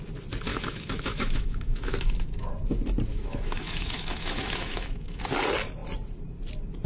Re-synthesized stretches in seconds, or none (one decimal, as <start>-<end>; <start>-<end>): 0.5-2.5; 3.1-5.2